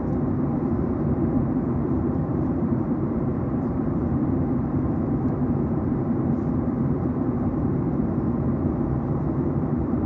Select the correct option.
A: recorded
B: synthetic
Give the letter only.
B